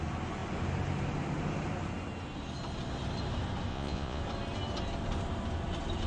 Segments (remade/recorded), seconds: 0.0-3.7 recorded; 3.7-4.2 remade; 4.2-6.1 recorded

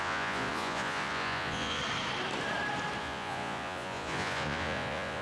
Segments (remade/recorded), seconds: 0.0-1.8 remade; 1.8-3.0 recorded; 3.0-5.2 remade